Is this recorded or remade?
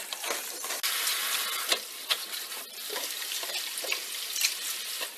recorded